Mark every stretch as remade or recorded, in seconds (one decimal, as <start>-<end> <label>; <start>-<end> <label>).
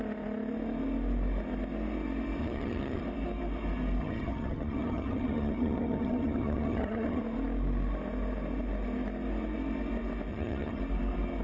0.0-2.4 recorded; 2.4-3.0 remade; 3.0-4.0 recorded; 4.0-7.2 remade; 7.2-10.3 recorded; 10.3-10.8 remade; 10.8-11.4 recorded